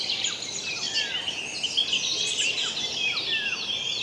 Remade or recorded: recorded